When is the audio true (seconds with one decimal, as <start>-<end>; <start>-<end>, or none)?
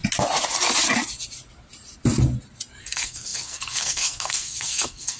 0.0-2.8